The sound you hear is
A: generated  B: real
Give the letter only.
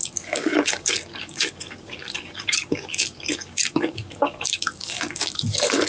A